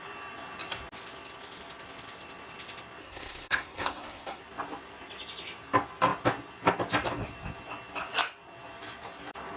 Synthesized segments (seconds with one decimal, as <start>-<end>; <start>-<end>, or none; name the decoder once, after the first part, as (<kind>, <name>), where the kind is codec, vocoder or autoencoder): 3.0-4.4 (codec, SNAC)